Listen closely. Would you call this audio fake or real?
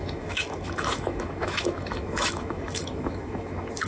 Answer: fake